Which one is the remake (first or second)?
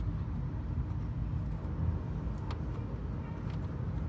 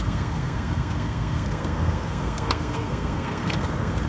second